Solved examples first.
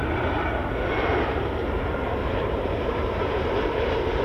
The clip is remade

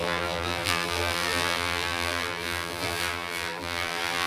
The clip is remade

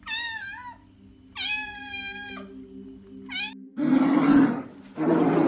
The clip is recorded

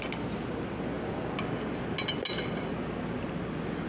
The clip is recorded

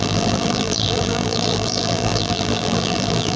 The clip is remade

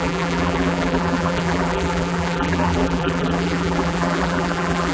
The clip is remade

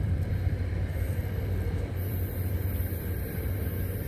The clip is remade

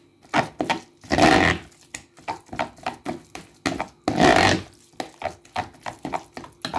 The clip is recorded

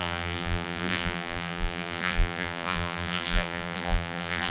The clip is remade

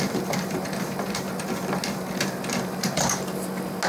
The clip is recorded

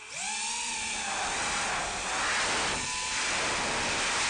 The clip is recorded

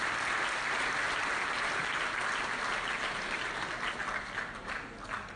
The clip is recorded